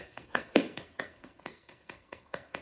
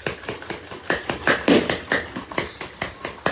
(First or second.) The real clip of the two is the second